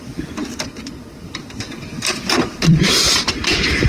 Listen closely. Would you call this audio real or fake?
fake